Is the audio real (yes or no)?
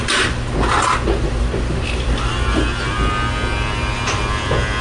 yes